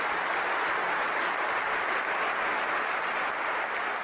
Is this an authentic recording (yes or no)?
yes